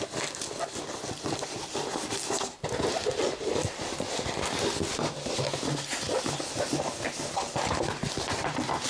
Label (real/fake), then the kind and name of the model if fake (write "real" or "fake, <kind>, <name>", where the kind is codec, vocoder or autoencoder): real